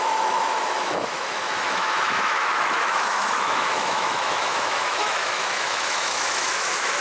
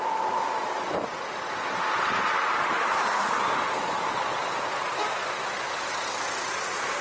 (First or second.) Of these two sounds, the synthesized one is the first